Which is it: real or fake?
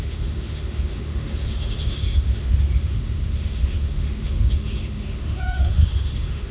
fake